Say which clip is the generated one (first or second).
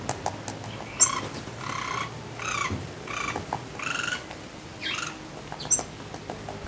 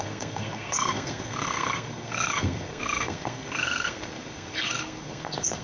second